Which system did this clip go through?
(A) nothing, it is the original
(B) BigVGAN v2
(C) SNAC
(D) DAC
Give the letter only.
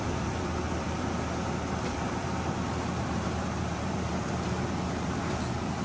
B